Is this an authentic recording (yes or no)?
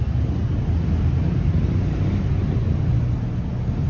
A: yes